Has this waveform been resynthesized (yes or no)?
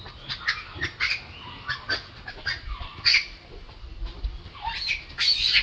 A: no